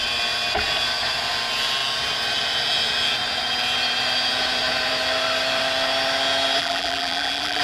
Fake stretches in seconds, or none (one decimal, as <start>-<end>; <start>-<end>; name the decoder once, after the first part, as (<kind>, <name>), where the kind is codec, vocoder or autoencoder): 6.6-7.6 (vocoder, BigVGAN v2)